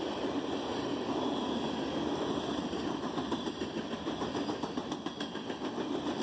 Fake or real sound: fake